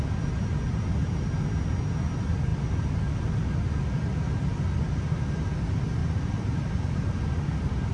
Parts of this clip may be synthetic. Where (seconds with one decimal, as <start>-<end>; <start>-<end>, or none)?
0.7-1.3; 6.0-6.7